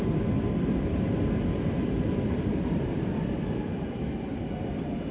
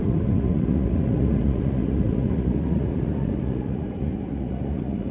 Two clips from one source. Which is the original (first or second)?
first